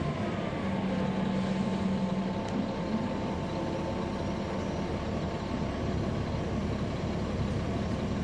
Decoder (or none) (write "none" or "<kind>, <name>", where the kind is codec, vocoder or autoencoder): none